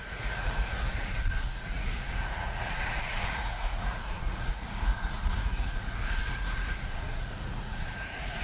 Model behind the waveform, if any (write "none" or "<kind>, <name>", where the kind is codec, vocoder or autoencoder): vocoder, Vocos